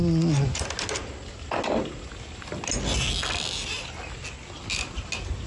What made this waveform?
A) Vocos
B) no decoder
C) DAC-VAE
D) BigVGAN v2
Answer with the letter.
B